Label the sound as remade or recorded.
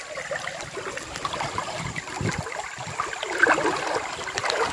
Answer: recorded